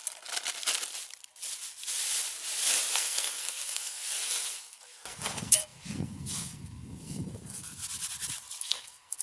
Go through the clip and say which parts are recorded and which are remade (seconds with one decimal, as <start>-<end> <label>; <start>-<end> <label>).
0.0-2.9 recorded; 2.9-7.8 remade; 7.8-8.6 recorded; 8.6-9.2 remade